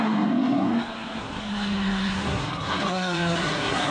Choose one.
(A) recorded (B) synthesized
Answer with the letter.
B